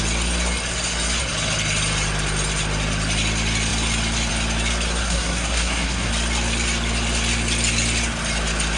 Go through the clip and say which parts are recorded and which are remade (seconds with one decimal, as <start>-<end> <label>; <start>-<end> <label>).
0.0-5.0 recorded; 5.0-6.1 remade; 6.1-8.8 recorded